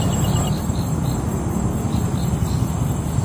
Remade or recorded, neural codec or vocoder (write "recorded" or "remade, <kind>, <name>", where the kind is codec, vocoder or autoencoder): recorded